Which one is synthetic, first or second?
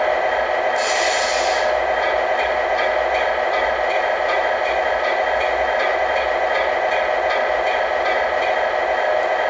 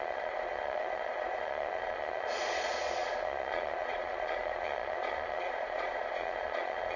second